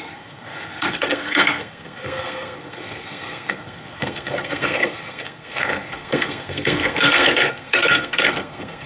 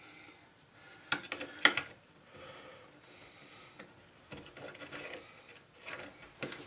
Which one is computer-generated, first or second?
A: first